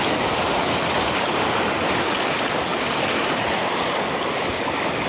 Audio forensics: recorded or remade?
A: recorded